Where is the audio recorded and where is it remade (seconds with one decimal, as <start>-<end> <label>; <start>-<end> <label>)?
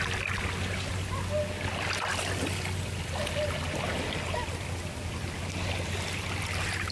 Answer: 0.0-6.9 recorded